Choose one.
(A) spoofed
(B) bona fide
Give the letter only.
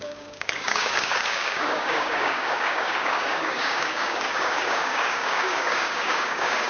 A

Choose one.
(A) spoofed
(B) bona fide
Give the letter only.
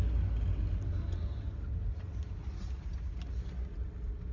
B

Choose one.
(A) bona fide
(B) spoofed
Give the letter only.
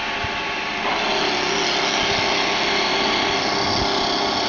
A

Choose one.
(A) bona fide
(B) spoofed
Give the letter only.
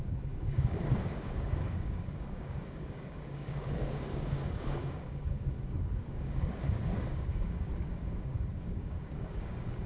B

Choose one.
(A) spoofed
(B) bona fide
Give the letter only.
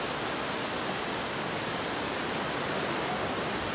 B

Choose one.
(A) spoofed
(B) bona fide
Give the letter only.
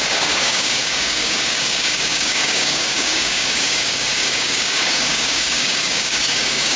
A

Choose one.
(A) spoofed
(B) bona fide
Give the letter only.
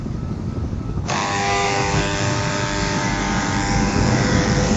A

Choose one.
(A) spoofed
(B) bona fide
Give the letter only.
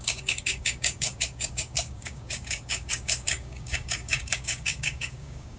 A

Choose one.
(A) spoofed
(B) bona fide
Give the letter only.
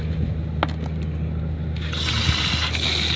B